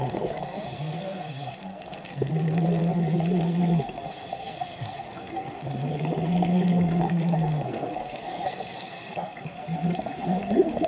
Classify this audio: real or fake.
fake